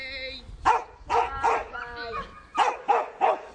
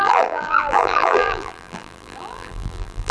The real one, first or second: first